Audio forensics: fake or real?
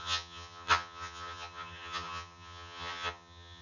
fake